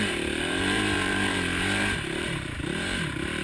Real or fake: fake